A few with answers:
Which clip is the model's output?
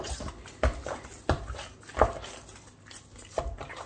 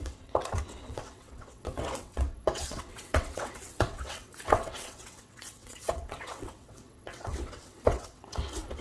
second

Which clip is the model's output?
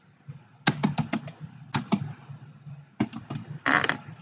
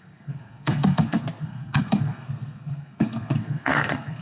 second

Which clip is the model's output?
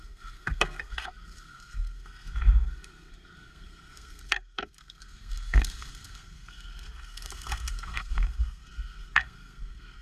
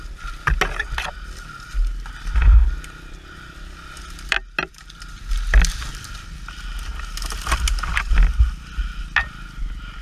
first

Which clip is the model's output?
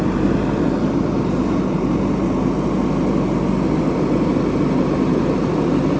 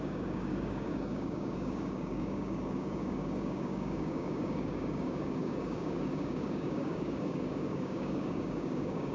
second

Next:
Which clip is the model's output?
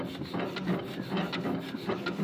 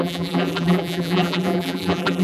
second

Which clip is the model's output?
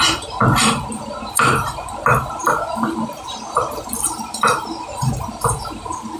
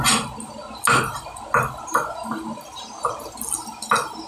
first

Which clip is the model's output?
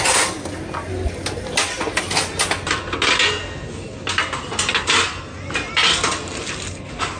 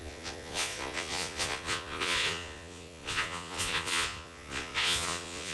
second